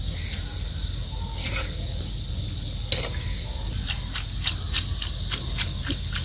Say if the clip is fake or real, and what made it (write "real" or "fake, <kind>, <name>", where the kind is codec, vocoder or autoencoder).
real